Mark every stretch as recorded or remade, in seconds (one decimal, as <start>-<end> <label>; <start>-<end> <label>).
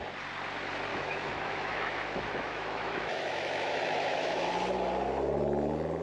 0.0-0.9 recorded; 0.9-4.5 remade; 4.5-6.0 recorded